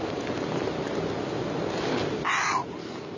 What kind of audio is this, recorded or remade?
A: recorded